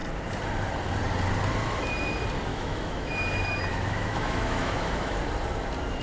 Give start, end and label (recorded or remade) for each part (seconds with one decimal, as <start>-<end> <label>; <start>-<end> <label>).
0.0-2.5 recorded; 2.5-3.1 remade; 3.1-3.7 recorded; 3.7-5.2 remade; 5.2-6.0 recorded